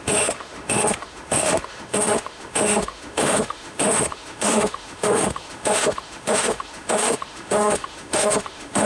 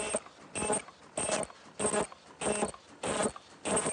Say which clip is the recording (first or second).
second